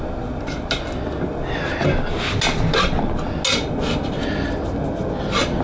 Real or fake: real